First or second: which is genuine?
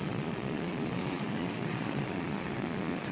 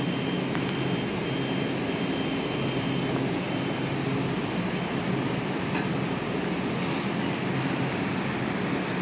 second